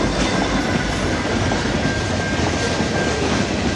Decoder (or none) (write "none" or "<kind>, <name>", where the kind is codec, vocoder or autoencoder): none